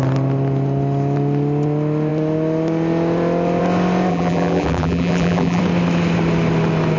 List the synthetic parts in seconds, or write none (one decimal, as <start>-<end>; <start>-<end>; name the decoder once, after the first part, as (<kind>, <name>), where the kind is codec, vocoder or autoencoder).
4.1-5.6 (vocoder, BigVGAN v2)